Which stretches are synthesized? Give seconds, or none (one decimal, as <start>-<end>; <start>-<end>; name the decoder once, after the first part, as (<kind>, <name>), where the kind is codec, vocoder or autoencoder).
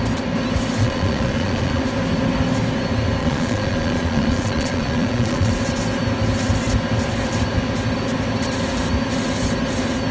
0.8-1.8 (vocoder, Vocos); 3.2-5.5